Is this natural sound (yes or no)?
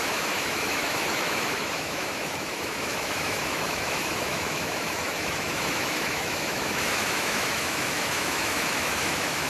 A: no